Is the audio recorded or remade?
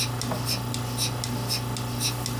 recorded